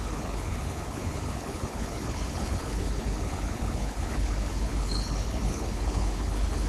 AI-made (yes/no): yes